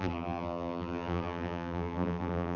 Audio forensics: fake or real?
fake